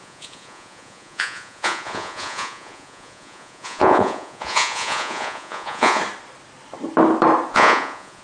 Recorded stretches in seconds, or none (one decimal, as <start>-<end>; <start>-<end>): 6.0-7.5